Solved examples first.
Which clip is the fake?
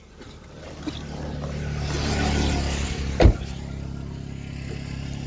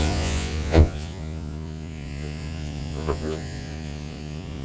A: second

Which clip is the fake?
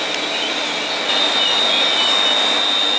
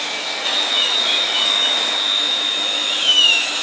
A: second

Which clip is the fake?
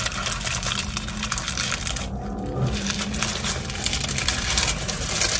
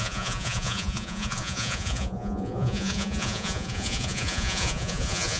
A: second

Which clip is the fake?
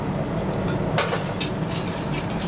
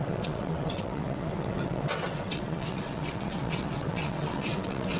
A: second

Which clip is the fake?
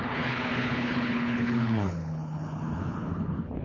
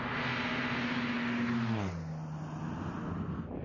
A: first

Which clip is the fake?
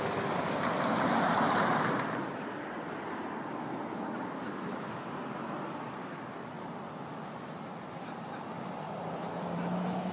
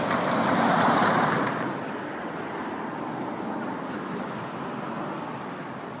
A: second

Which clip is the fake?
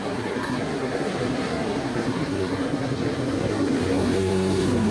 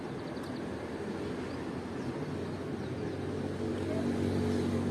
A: first